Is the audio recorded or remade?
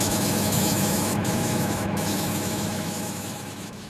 remade